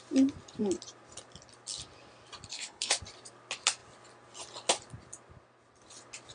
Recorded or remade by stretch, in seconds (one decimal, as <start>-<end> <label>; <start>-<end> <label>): 0.0-2.5 recorded; 2.5-3.0 remade; 3.0-6.3 recorded